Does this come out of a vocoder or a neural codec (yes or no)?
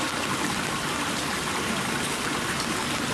no